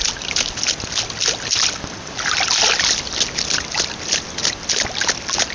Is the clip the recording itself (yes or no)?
yes